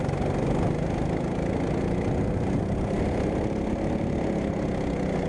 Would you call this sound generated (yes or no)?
no